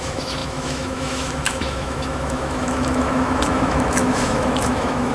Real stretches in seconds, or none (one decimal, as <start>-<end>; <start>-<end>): none

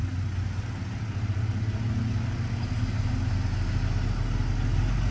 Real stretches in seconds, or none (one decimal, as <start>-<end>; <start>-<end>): 0.0-5.1

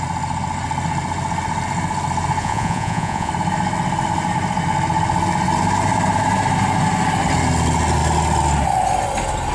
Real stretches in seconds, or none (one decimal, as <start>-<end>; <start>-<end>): 0.0-2.4; 3.3-9.5

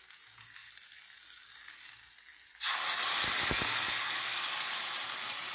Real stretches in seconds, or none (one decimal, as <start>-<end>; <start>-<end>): 0.0-5.5